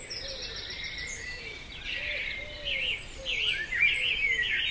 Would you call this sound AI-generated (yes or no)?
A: no